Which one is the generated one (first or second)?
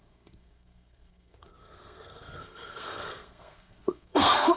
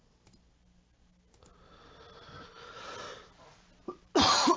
first